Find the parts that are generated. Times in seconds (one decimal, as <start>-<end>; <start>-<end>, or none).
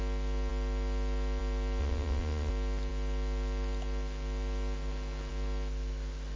1.8-2.5